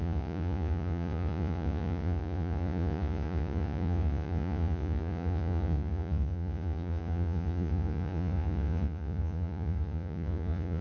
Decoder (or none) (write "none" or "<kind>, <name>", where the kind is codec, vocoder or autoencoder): vocoder, Vocos